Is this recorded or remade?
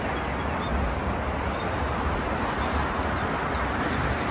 recorded